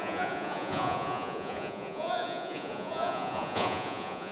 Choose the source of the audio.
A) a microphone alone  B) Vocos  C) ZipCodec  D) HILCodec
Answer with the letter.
B